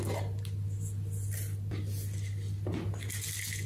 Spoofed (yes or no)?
no